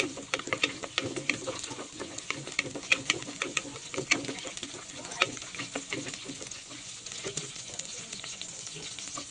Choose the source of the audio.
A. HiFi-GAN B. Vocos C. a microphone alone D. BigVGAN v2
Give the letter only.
B